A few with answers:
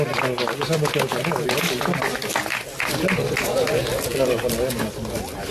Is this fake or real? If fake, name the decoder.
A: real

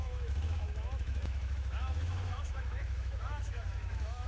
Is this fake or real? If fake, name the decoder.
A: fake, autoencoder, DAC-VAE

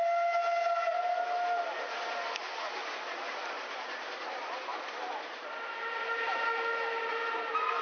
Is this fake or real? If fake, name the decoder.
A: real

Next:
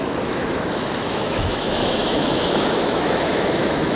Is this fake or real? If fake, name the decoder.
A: fake, autoencoder, DAC-VAE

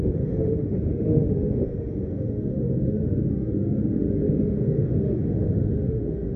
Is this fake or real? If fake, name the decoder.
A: fake, autoencoder, DAC-VAE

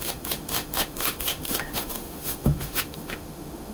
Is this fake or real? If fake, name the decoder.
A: fake, autoencoder, DAC-VAE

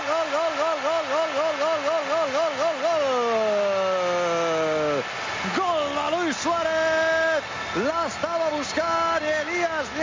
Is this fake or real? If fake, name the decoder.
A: real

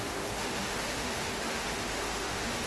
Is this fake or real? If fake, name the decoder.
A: fake, autoencoder, DAC-VAE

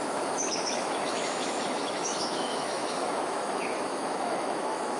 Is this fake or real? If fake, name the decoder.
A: fake, autoencoder, DAC-VAE